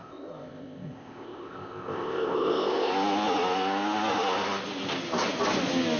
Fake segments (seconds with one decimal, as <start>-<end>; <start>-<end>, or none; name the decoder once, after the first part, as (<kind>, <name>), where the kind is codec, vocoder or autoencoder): 0.0-2.9 (codec, ZipCodec)